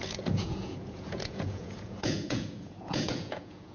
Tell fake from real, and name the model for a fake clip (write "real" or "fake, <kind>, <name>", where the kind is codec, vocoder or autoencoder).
fake, vocoder, Vocos